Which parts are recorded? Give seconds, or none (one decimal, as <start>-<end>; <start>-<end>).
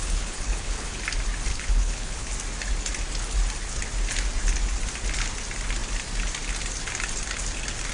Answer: 1.0-1.5; 2.3-7.9